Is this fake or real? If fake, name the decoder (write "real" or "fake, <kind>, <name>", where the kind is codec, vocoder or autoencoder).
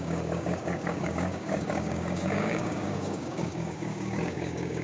fake, codec, DAC